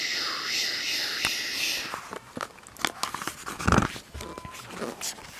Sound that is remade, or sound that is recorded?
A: recorded